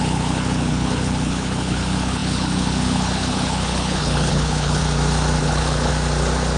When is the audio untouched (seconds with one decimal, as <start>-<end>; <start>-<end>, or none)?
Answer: 4.8-5.4; 5.9-6.6